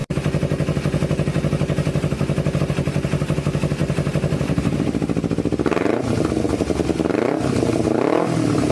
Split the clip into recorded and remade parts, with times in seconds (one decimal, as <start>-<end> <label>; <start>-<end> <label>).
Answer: 0.0-8.7 recorded